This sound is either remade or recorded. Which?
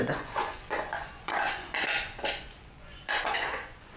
remade